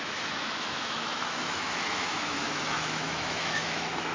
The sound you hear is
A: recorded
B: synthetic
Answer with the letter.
B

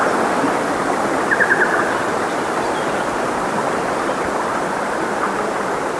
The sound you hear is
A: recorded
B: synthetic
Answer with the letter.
A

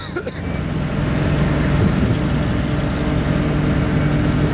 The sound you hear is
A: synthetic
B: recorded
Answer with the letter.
B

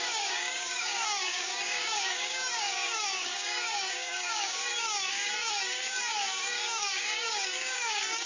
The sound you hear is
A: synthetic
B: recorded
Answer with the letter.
A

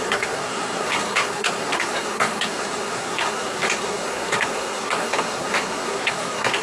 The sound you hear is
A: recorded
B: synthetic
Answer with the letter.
B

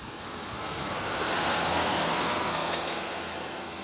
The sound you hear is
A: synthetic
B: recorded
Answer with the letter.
A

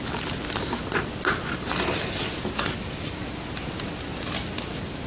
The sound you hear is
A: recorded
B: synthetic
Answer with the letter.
A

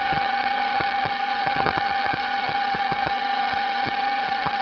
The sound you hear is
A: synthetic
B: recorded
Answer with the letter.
A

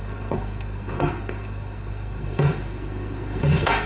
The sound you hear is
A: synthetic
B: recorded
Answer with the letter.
A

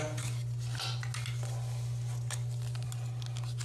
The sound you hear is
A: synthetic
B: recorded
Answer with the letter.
B